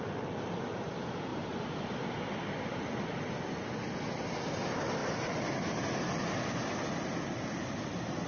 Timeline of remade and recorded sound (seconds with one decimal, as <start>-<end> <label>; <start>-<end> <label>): 0.0-8.3 recorded